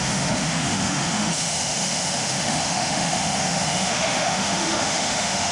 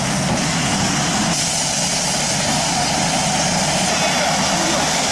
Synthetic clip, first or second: first